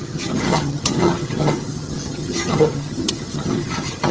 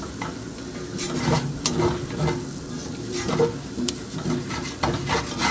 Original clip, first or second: second